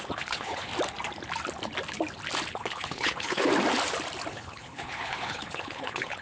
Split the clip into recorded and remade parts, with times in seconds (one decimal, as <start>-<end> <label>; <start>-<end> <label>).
0.0-0.7 remade; 0.7-2.5 recorded; 2.5-3.5 remade; 3.5-4.3 recorded; 4.3-6.2 remade